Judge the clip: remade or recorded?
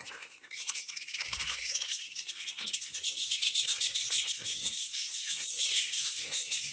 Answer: remade